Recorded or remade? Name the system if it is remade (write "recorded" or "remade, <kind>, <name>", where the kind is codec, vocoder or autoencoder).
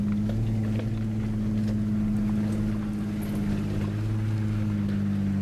recorded